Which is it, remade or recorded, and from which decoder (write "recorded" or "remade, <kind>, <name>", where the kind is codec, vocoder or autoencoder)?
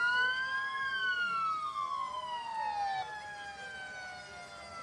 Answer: recorded